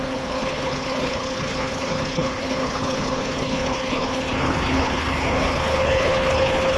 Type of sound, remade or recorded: remade